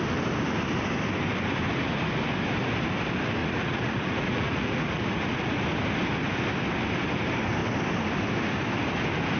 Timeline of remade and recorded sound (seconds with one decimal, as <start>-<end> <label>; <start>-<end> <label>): 0.0-3.4 recorded; 3.4-5.6 remade; 5.6-9.4 recorded